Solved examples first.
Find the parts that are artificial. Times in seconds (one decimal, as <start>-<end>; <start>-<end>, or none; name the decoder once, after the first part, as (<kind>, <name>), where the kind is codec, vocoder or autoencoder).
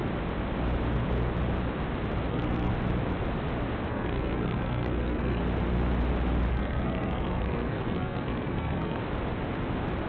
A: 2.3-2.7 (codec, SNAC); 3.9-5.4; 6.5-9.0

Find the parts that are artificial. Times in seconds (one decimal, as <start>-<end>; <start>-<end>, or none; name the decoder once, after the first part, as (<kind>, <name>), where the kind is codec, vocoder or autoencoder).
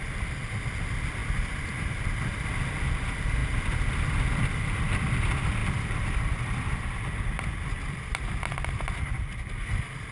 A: none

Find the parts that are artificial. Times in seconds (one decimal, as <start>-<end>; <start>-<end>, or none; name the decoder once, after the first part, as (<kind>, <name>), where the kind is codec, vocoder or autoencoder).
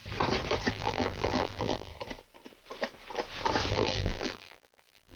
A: 0.7-1.9 (vocoder, BigVGAN v2); 3.7-5.2